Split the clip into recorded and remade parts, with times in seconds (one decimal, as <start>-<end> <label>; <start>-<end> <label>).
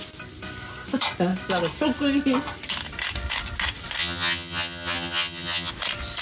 0.0-4.0 recorded; 4.0-5.7 remade; 5.7-6.2 recorded